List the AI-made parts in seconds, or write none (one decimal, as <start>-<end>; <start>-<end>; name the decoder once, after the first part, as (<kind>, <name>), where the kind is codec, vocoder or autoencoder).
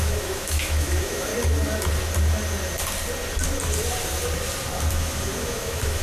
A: 0.0-1.3 (autoencoder, DAC-VAE); 4.9-6.0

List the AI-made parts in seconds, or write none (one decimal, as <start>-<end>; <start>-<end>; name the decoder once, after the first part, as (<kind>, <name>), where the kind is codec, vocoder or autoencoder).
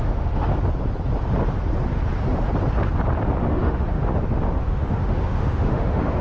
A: 0.0-0.5 (autoencoder, DAC-VAE); 3.4-4.0; 4.6-6.2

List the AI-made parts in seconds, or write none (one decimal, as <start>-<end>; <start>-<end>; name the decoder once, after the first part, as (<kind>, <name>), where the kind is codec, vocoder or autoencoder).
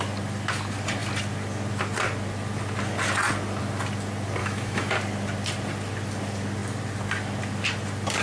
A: 4.4-4.9 (autoencoder, DAC-VAE)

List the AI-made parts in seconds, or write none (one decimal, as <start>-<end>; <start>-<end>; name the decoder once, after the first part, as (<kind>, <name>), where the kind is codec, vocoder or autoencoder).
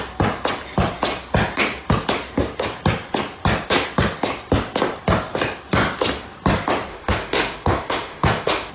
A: 6.9-8.7 (autoencoder, DAC-VAE)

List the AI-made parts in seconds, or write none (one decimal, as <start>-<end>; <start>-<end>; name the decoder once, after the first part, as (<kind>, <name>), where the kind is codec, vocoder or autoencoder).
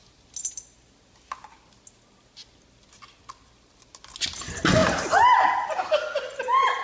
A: none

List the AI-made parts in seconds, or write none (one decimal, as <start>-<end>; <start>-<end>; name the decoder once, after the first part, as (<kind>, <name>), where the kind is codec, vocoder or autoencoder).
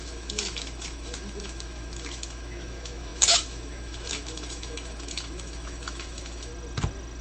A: 0.0-6.5 (autoencoder, DAC-VAE)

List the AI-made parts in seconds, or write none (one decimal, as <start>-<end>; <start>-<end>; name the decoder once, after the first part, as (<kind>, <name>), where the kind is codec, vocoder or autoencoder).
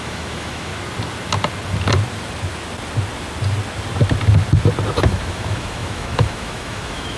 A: 0.0-0.7 (autoencoder, DAC-VAE); 5.0-7.2